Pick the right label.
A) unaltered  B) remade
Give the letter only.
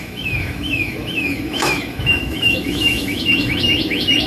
B